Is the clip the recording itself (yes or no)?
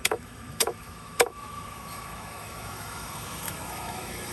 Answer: no